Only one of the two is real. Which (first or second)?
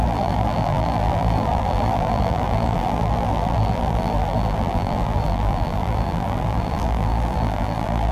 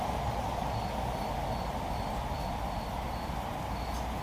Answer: second